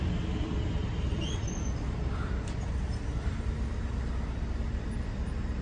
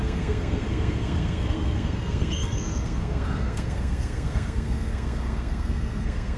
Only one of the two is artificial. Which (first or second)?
second